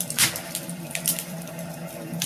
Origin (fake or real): fake